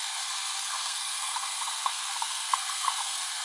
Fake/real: fake